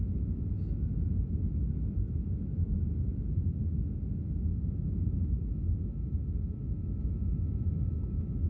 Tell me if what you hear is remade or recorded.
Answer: remade